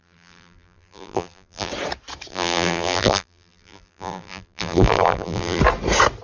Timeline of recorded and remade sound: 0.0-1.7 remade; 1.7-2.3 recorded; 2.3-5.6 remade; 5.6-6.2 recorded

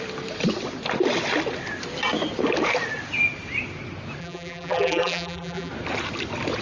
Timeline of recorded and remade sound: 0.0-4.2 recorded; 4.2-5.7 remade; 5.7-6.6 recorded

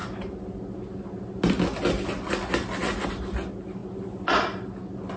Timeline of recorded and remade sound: 0.0-5.2 recorded

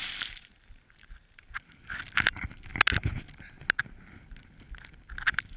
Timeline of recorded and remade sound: 0.0-1.4 remade; 1.4-5.6 recorded

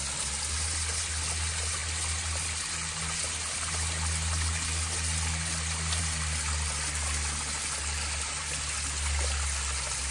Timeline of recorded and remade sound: 0.0-10.1 recorded